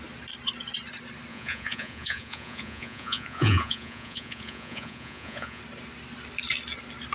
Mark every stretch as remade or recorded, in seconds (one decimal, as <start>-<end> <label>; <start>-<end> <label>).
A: 0.0-1.3 recorded; 1.3-5.6 remade; 5.6-7.1 recorded